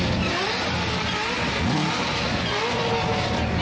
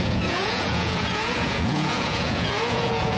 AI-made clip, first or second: second